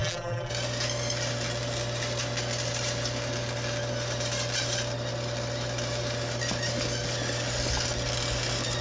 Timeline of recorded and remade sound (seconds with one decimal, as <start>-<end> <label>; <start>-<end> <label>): 0.0-0.5 remade; 0.5-8.8 recorded